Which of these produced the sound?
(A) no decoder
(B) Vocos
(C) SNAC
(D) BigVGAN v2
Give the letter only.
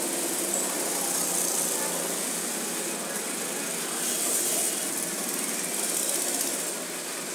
A